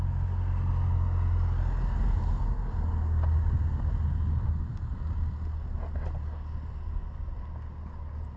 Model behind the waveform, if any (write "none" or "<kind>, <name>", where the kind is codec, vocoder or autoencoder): none